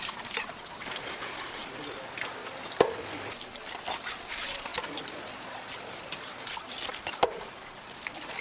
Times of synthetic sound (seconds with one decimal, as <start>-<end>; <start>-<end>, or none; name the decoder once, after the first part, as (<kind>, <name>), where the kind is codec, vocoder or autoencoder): 0.0-1.6 (vocoder, BigVGAN v2); 4.2-4.7; 6.9-8.4